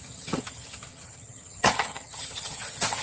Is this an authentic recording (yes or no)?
no